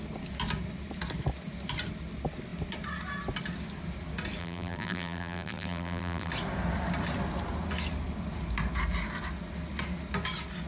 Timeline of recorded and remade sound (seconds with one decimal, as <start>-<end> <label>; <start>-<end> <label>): 0.0-4.4 recorded; 4.4-6.3 remade; 6.3-10.7 recorded